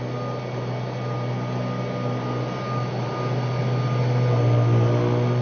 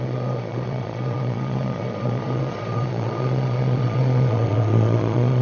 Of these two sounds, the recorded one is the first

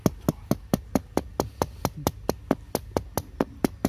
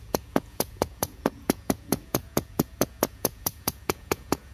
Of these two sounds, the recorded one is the first